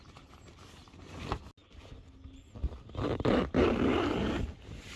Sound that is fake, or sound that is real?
real